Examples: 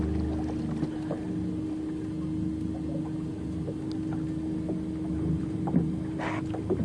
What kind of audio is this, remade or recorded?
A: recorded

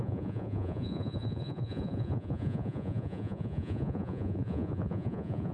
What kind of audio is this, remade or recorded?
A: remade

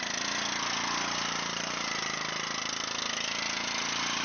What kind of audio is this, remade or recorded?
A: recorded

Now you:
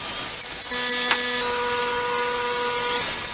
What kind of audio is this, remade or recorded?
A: recorded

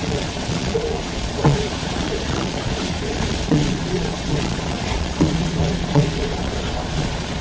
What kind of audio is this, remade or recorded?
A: remade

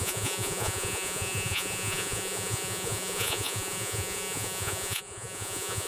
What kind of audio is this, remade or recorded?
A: remade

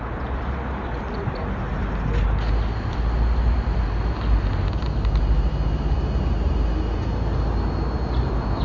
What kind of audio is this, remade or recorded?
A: recorded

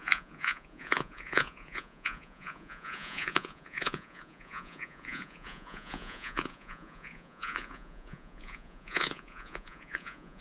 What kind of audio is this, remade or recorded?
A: remade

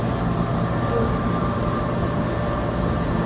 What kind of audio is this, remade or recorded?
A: remade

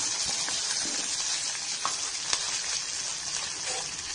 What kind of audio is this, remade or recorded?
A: recorded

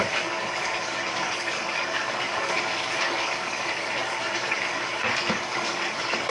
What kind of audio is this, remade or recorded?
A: remade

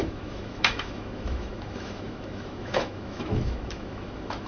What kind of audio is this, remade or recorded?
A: remade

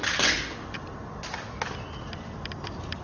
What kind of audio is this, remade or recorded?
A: recorded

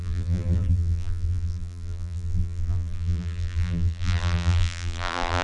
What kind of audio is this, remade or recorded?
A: remade